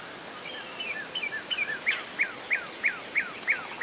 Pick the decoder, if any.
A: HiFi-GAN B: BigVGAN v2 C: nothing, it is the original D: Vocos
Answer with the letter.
C